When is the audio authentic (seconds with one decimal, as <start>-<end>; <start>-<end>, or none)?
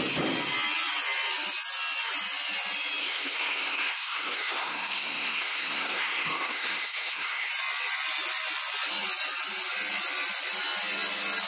0.0-3.0; 7.5-11.5